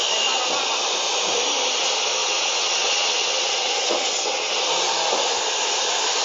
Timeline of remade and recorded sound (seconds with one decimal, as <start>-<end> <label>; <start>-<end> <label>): 0.0-2.2 recorded; 2.2-4.5 remade; 4.5-6.2 recorded